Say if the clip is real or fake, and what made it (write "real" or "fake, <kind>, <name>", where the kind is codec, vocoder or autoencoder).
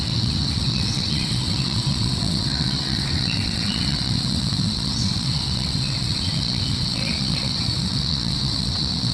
fake, vocoder, WaveNeXt